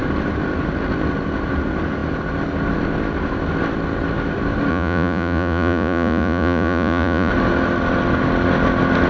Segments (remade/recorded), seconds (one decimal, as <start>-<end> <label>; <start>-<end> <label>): 0.0-4.7 recorded; 4.7-7.3 remade; 7.3-9.1 recorded